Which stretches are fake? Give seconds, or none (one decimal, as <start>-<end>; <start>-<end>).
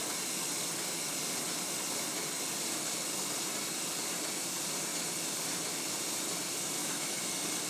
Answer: 6.8-7.3